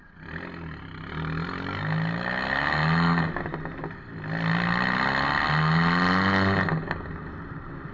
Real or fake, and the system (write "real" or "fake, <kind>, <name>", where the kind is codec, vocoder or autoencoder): real